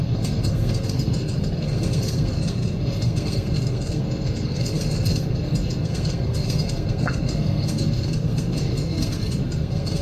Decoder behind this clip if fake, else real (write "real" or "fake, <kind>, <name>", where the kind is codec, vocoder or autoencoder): fake, codec, SNAC